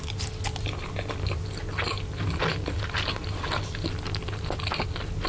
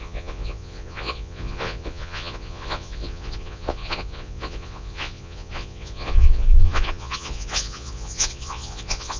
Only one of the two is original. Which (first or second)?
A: first